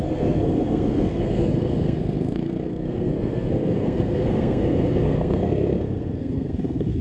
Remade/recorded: remade